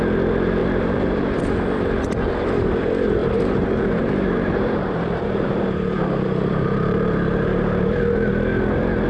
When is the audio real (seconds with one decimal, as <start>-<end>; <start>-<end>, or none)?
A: 0.0-0.6; 1.4-3.2; 8.3-9.1

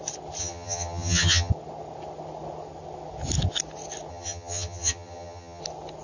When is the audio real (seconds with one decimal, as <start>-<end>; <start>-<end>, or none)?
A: 0.0-0.4; 1.5-4.1; 5.6-6.0

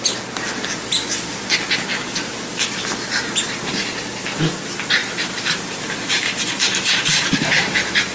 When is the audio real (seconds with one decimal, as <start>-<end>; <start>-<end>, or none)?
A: 0.0-5.0; 7.0-8.1

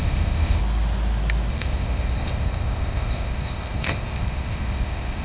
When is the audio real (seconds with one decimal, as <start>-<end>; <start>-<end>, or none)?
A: 0.6-1.5

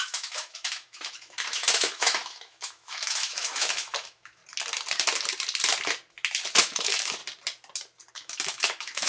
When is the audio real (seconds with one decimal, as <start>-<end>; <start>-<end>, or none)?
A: 4.4-6.6; 7.2-8.1

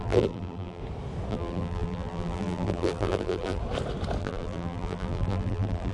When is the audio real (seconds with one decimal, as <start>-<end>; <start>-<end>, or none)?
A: 0.8-1.3; 3.6-4.2

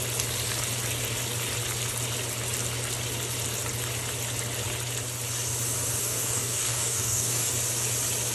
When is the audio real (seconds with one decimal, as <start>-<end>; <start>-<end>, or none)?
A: 0.0-6.0; 7.5-8.3

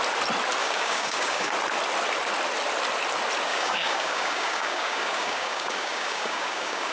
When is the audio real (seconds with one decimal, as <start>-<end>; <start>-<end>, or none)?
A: 0.0-0.6; 1.5-3.5